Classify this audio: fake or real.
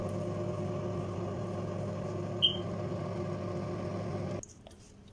real